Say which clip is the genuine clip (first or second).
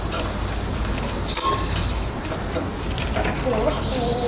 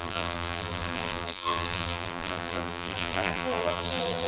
first